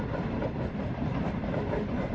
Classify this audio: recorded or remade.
recorded